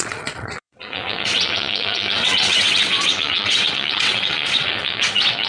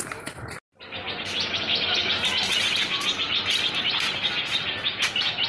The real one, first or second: second